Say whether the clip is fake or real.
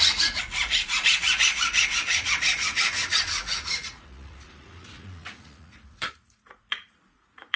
fake